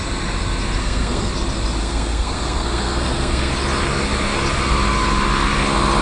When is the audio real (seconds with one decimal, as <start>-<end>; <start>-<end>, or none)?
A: 0.0-0.8; 1.3-1.8; 3.5-6.0